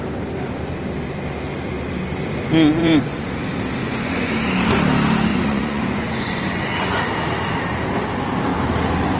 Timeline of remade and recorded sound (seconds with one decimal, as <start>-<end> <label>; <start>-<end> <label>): 0.0-2.8 recorded; 2.8-3.3 remade; 3.3-3.8 recorded; 3.8-4.3 remade; 4.3-5.3 recorded; 5.3-7.0 remade; 7.0-9.2 recorded